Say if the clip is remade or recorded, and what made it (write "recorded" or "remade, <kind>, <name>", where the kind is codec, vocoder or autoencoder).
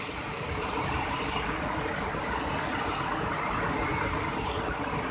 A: recorded